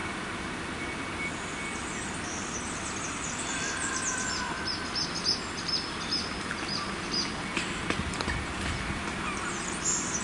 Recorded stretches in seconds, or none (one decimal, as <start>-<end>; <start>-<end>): 0.0-10.2